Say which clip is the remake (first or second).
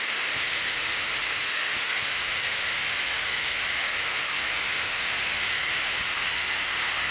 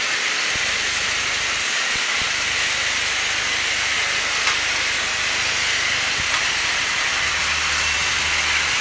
first